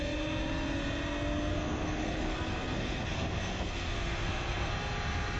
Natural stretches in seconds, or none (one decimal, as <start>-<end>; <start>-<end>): 0.0-1.5; 4.7-5.4

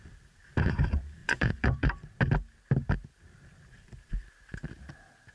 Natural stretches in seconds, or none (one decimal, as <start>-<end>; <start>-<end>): 0.0-1.2; 1.9-5.3

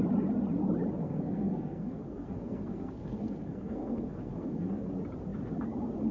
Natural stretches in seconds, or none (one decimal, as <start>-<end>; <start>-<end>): 0.0-1.0; 4.7-6.1